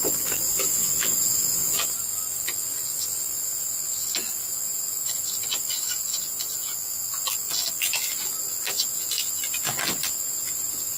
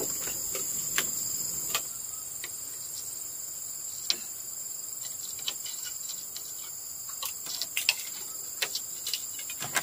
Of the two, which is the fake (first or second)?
first